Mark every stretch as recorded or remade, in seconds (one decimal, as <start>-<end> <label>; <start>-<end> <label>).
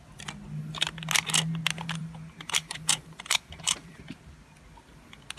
0.0-2.0 recorded; 2.0-4.0 remade; 4.0-5.4 recorded